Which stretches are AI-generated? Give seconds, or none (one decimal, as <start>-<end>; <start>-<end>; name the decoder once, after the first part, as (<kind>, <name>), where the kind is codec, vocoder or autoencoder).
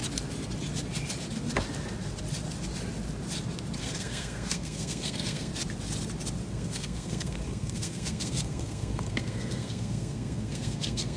3.8-5.5 (codec, SNAC); 6.5-11.2